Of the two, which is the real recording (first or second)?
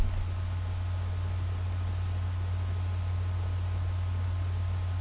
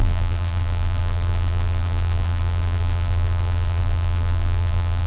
first